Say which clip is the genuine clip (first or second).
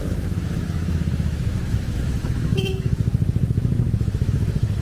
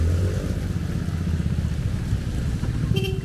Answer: second